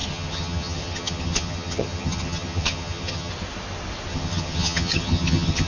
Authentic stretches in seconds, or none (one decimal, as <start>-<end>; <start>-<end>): 3.3-4.1